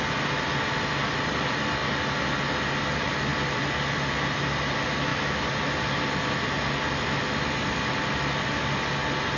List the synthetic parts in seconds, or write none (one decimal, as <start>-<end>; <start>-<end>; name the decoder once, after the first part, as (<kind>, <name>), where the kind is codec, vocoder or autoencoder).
none